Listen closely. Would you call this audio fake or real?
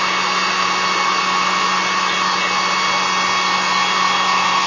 real